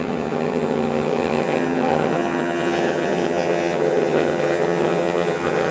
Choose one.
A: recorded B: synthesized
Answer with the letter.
B